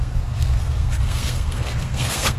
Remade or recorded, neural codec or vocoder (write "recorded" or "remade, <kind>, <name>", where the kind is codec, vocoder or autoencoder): remade, codec, SNAC